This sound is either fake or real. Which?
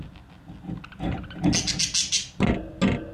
real